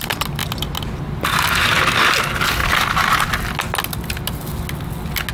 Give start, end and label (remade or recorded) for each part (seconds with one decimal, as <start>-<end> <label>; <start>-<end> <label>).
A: 0.0-5.3 recorded